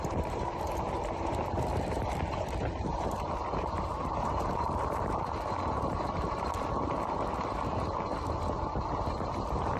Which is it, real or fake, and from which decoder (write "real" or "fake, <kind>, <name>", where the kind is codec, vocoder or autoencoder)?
fake, vocoder, BigVGAN v2